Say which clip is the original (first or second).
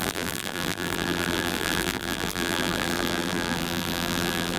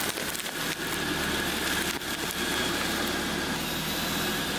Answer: second